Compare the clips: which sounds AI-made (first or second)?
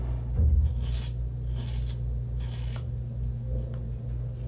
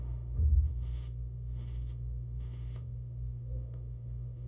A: second